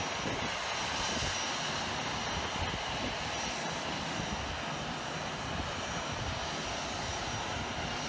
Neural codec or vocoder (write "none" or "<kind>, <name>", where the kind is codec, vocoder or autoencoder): none